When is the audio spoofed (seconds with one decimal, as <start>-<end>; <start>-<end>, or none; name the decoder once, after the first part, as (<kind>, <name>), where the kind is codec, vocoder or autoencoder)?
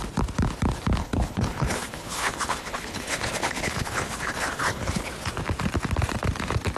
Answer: 1.0-5.1 (codec, HILCodec)